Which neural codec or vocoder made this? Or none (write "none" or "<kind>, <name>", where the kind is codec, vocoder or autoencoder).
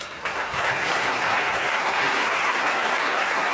codec, SNAC